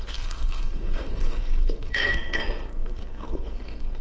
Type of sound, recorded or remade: remade